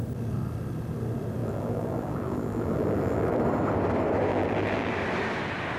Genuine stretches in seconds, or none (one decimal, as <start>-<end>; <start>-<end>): 0.0-1.4; 3.4-4.3; 4.9-5.8